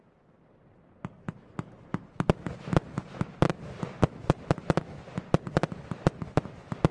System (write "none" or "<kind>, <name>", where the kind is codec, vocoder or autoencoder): none